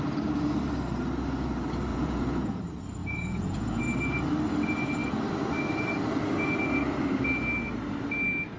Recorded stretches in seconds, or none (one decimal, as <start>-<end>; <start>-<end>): 0.0-1.9; 2.6-3.0; 3.8-8.6

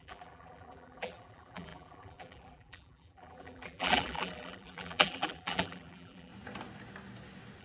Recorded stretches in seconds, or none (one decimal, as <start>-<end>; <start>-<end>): 6.3-7.6